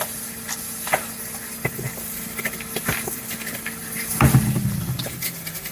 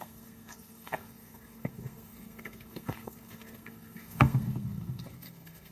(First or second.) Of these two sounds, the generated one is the second